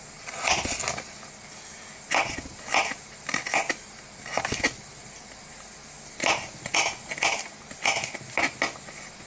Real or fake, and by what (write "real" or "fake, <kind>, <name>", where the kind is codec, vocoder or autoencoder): real